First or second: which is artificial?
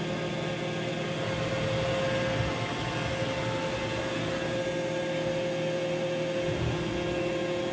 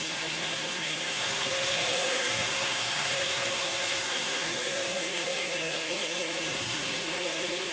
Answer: second